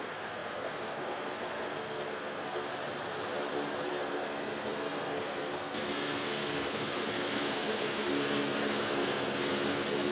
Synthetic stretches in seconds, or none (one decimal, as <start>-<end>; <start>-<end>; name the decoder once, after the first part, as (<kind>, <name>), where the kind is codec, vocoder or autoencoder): 0.0-2.7 (codec, SNAC); 3.9-10.1